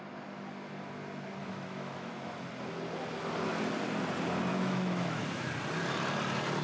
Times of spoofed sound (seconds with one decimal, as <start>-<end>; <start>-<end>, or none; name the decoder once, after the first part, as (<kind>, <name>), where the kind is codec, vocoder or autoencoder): 1.4-2.1 (autoencoder, DAC-VAE); 4.5-5.5